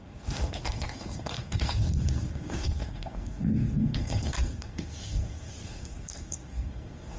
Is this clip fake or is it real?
fake